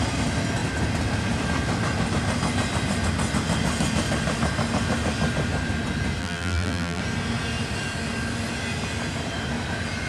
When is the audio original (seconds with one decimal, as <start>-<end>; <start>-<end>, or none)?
0.0-6.2; 7.0-10.1